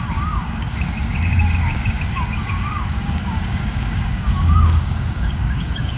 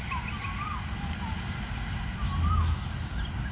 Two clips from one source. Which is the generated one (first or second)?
first